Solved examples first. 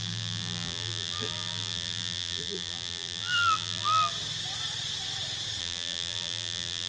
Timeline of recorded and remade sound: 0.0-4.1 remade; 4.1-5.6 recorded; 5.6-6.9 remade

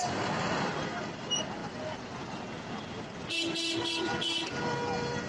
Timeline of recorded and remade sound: 0.0-5.3 recorded

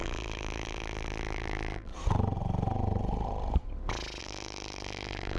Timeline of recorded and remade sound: 0.0-1.9 remade; 1.9-4.2 recorded; 4.2-5.4 remade

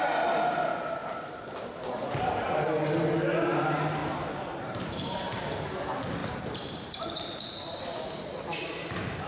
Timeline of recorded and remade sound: 0.0-4.0 recorded; 4.0-5.5 remade; 5.5-6.2 recorded; 6.2-9.3 remade

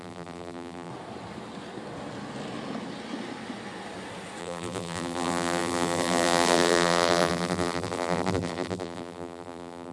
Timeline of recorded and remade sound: 0.0-0.9 remade; 0.9-4.4 recorded; 4.4-9.9 remade

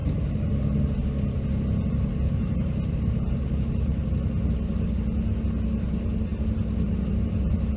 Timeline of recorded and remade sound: 0.0-0.5 remade; 0.5-2.4 recorded; 2.4-4.0 remade; 4.0-7.8 recorded

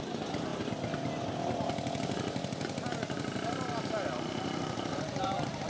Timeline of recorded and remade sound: 0.0-0.5 remade; 0.5-3.9 recorded; 3.9-5.7 remade

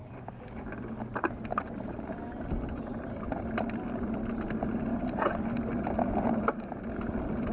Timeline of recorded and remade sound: 0.0-0.5 remade; 0.5-2.9 recorded; 2.9-3.5 remade; 3.5-4.9 recorded; 4.9-5.9 remade; 5.9-7.5 recorded